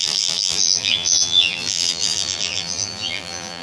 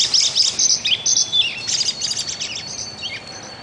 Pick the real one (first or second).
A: second